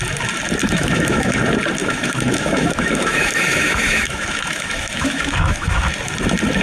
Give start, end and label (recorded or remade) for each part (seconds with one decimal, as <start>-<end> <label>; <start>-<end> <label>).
0.0-0.6 recorded; 0.6-1.4 remade; 1.4-1.8 recorded; 1.8-5.8 remade; 5.8-6.6 recorded